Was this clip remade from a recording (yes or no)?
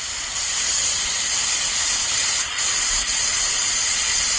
no